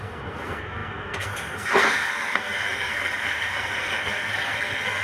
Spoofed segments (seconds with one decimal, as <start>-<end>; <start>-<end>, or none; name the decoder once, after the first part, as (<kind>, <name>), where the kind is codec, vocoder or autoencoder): 0.0-5.0 (codec, SNAC)